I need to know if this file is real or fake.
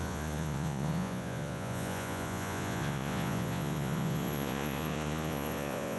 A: fake